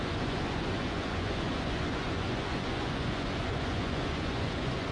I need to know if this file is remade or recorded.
remade